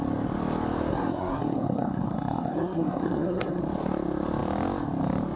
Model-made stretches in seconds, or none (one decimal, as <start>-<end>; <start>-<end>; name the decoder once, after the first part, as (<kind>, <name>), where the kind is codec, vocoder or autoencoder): 0.9-3.6 (codec, SNAC)